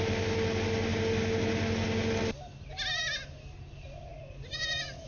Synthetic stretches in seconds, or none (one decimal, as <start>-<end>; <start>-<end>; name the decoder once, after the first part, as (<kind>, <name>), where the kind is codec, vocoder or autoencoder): none